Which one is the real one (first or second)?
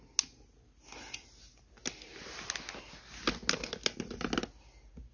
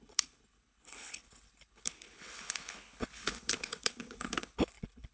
first